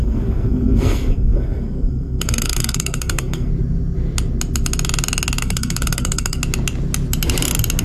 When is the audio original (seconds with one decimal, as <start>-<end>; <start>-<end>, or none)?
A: 3.5-5.4; 6.4-7.8